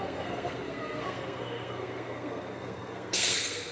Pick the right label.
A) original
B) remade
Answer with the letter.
B